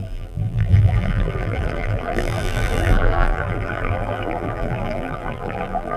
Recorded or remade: remade